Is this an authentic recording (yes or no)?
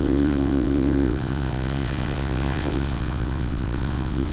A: no